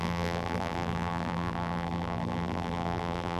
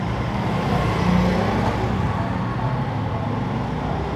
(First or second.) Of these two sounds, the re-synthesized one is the first